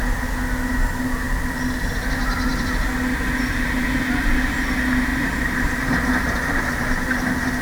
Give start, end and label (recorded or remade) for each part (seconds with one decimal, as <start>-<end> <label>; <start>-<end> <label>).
0.0-5.1 recorded; 5.1-6.6 remade; 6.6-7.6 recorded